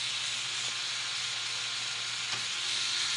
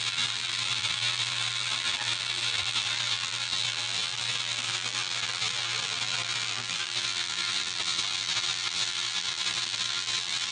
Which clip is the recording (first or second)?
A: first